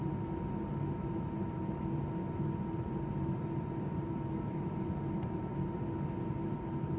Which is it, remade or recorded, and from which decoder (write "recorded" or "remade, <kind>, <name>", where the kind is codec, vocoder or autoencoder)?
remade, vocoder, BigVGAN v2